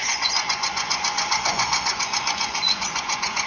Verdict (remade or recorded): remade